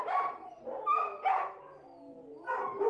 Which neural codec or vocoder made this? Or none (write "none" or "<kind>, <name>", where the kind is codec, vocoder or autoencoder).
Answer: none